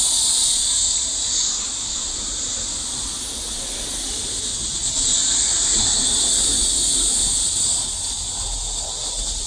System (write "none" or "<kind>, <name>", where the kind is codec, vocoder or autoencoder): none